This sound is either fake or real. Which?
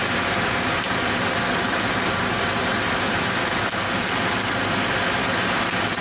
fake